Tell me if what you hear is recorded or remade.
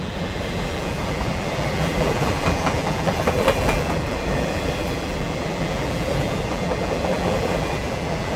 remade